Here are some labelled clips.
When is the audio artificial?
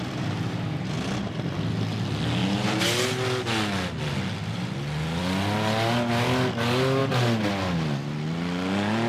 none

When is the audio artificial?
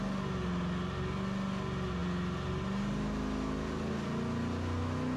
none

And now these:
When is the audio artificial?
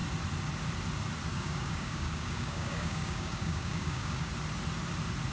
1.3-4.3 (codec, DAC)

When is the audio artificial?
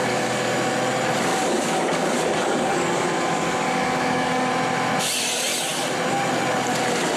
0.0-0.5 (codec, DAC); 1.3-4.5